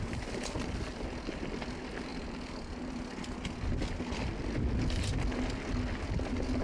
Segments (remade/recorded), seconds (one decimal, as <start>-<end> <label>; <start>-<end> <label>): 0.0-6.6 recorded